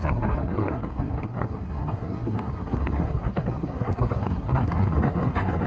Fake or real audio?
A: fake